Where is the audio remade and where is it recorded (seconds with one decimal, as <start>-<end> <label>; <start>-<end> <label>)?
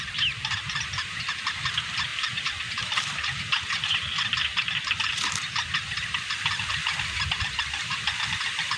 0.0-2.1 recorded; 2.1-3.4 remade; 3.4-8.8 recorded